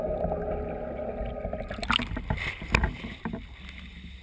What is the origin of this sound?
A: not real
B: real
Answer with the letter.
B